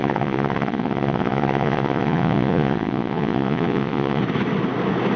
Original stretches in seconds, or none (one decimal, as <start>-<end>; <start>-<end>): 4.2-5.2